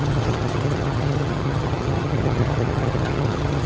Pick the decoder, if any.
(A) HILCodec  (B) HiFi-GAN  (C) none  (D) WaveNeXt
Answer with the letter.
B